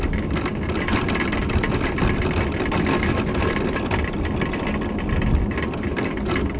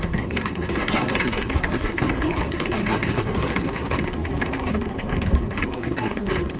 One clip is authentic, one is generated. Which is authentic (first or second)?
first